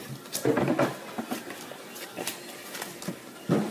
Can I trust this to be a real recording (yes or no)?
yes